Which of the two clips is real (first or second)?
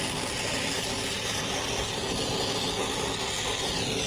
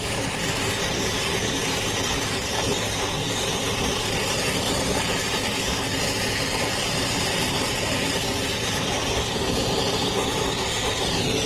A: first